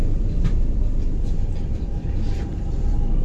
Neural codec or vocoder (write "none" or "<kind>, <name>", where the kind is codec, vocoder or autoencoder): vocoder, BigVGAN v2